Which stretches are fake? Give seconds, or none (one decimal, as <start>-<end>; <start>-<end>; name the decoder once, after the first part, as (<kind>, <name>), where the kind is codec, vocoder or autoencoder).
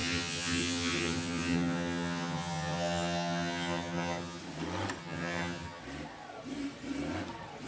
0.0-4.4 (vocoder, HiFi-GAN); 5.0-5.8